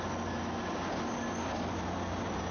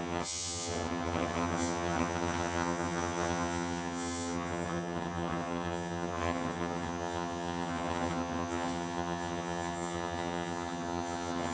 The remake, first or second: second